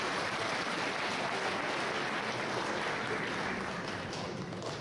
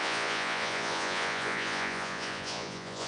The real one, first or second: first